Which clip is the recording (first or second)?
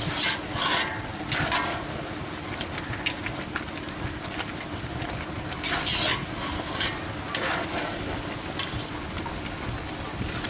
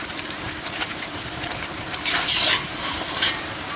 first